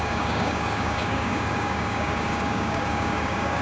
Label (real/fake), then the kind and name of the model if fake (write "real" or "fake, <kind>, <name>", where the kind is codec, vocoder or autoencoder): fake, codec, DAC